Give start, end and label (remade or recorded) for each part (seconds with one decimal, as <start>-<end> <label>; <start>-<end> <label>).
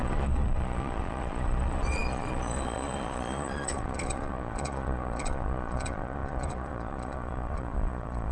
0.0-8.3 remade